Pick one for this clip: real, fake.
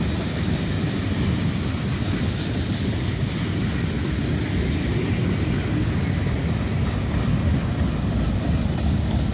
real